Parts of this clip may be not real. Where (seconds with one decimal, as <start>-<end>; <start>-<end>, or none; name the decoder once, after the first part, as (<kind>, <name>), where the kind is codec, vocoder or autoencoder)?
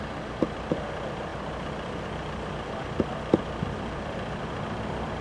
none